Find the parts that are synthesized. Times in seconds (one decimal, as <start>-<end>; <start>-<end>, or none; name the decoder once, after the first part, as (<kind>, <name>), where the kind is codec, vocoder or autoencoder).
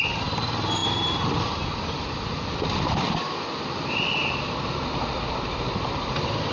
none